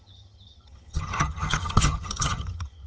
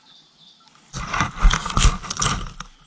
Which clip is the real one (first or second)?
second